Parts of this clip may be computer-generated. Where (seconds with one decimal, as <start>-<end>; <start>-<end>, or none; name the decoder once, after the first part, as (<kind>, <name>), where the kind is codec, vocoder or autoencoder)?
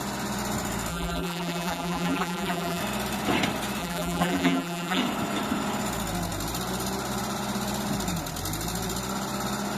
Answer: 0.9-2.8 (vocoder, BigVGAN v2); 3.8-5.0